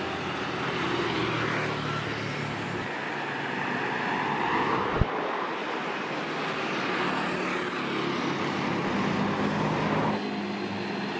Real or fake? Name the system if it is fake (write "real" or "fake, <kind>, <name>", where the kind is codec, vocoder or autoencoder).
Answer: real